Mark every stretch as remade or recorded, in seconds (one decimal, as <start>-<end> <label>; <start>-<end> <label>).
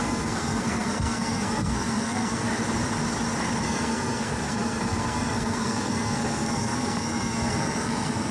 0.0-2.5 remade; 2.5-3.6 recorded; 3.6-8.3 remade